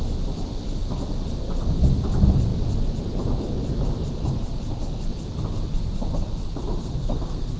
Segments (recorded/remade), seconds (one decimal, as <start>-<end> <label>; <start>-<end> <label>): 0.0-6.8 recorded; 6.8-7.6 remade